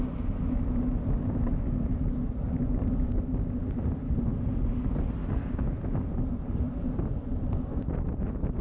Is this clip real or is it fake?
real